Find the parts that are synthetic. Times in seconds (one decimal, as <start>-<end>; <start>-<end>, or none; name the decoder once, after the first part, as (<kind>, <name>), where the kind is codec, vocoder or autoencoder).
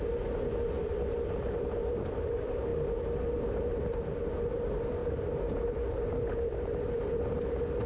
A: 0.0-7.9 (vocoder, BigVGAN v2)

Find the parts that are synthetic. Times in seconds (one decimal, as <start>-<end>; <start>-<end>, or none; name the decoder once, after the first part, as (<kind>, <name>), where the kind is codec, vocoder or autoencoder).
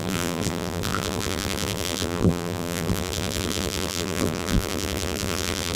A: 0.0-5.8 (vocoder, BigVGAN v2)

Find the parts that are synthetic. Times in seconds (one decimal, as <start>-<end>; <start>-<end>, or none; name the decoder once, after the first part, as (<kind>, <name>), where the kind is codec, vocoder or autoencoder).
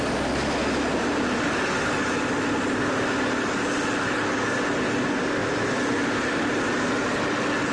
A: none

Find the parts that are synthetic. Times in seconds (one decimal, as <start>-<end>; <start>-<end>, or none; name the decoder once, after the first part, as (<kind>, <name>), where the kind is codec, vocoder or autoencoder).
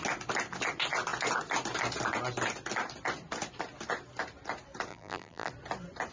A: 4.9-5.5 (vocoder, BigVGAN v2)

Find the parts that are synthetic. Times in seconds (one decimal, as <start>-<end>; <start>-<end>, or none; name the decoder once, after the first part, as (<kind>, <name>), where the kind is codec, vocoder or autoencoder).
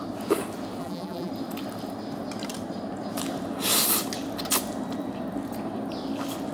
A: 0.8-1.3 (vocoder, BigVGAN v2)